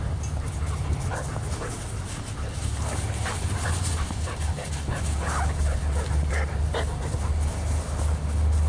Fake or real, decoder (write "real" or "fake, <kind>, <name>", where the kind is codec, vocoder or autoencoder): real